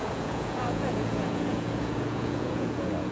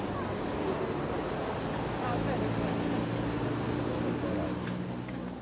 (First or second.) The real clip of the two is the second